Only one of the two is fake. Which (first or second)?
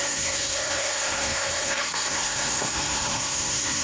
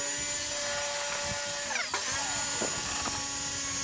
first